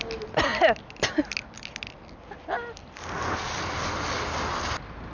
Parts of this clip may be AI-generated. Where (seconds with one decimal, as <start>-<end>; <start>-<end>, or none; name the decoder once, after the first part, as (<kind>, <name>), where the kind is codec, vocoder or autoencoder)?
none